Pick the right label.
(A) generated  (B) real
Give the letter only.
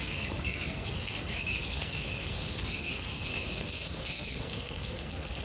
A